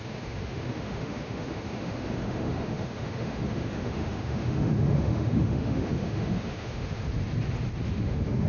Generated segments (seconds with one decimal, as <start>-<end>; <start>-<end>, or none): 0.0-7.0; 7.9-8.5